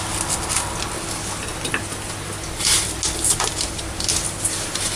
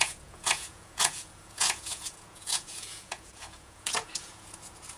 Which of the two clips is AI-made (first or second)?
second